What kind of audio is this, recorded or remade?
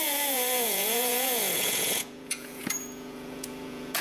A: remade